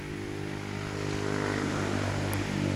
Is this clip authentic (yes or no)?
yes